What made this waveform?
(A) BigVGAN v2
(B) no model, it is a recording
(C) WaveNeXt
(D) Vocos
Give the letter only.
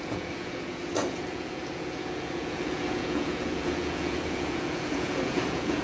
D